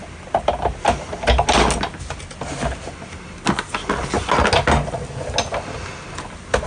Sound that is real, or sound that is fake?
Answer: real